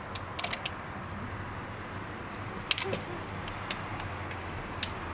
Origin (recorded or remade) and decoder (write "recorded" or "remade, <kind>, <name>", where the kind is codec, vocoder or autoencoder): recorded